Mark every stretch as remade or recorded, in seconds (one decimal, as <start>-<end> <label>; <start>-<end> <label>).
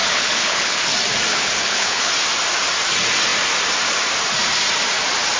0.0-0.8 remade; 0.8-1.3 recorded; 1.3-2.1 remade; 2.1-5.4 recorded